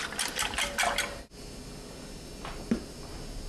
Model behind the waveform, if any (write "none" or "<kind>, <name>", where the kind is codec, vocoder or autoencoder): none